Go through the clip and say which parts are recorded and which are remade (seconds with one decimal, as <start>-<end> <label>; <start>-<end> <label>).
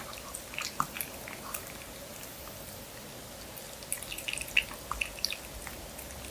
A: 0.0-6.3 recorded